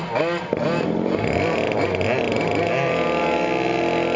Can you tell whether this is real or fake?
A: real